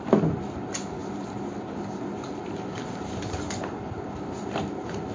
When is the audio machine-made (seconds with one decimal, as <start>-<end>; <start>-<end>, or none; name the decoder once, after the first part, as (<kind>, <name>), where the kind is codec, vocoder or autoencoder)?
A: none